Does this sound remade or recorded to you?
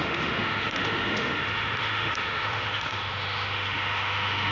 remade